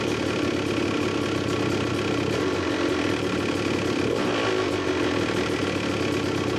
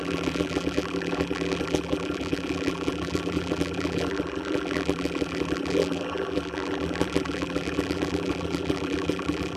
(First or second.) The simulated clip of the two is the second